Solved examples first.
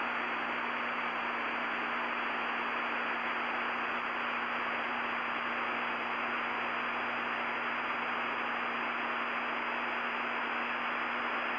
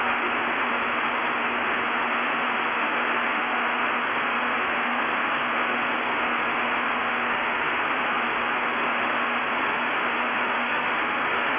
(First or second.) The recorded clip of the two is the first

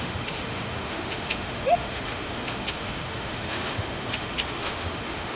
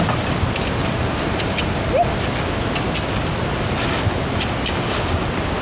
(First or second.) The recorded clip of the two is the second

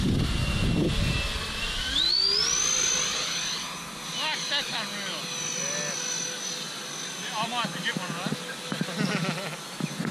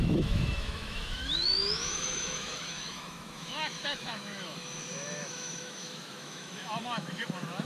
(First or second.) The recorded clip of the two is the first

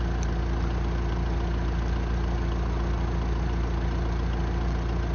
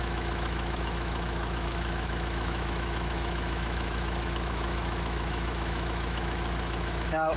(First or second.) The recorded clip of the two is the first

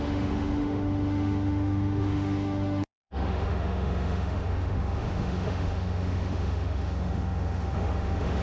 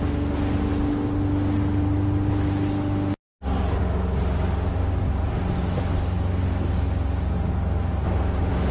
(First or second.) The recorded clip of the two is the second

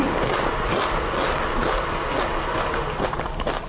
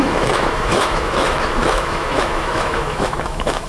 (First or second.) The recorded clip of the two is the first